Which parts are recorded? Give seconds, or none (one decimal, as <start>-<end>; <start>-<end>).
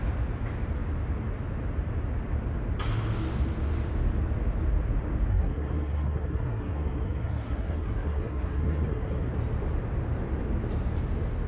0.0-5.3; 9.3-11.5